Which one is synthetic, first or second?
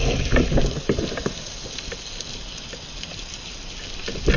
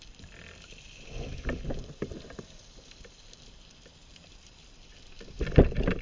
second